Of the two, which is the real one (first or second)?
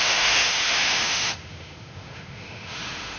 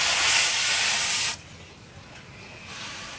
second